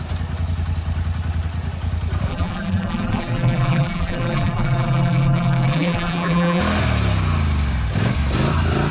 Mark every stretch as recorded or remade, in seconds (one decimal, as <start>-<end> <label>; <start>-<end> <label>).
0.0-2.3 recorded; 2.3-6.6 remade; 6.6-8.9 recorded